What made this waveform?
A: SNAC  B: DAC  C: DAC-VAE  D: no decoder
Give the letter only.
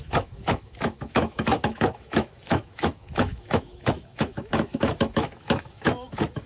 C